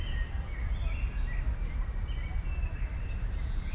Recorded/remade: recorded